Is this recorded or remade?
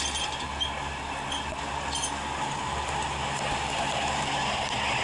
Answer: recorded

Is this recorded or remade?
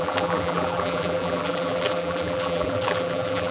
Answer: remade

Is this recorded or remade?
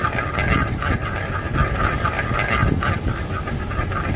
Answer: recorded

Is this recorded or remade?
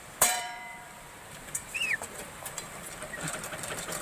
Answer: remade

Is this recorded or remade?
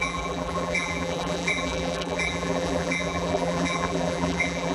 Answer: remade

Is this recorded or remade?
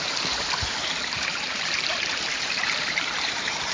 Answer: remade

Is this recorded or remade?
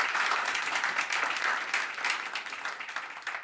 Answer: remade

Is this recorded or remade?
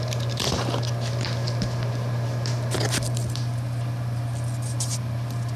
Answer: remade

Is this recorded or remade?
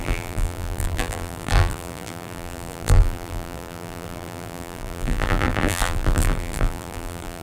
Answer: remade